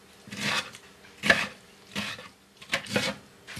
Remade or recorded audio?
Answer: recorded